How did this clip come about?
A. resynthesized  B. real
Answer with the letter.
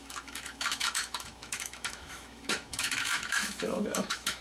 A